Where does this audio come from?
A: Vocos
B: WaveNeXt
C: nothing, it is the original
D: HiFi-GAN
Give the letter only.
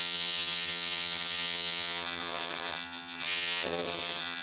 D